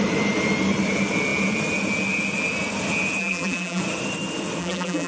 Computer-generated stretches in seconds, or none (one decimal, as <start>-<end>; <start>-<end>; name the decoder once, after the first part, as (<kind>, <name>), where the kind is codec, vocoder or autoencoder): 3.2-3.8 (vocoder, BigVGAN v2); 4.6-5.1